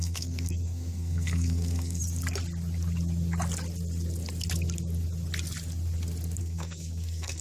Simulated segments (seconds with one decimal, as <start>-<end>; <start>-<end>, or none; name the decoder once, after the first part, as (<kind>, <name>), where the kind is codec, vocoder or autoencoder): 0.0-2.0 (codec, SNAC); 6.4-7.4